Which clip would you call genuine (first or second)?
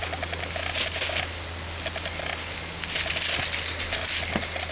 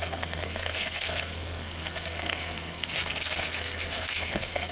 first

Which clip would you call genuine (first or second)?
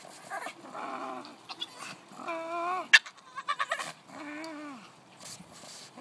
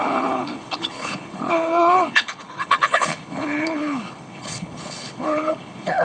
first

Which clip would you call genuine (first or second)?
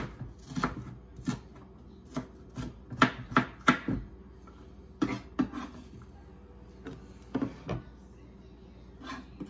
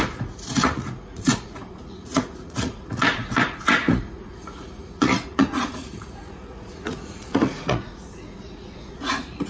first